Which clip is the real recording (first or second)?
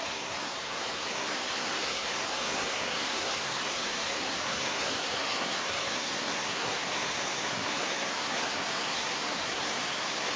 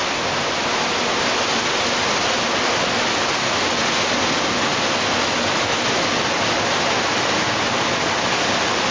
second